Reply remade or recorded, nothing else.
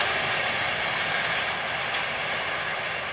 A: recorded